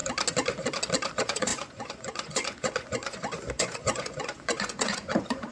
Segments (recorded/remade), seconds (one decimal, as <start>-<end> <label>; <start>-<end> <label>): 0.0-1.1 recorded; 1.1-5.5 remade